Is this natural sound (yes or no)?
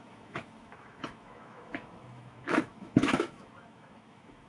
no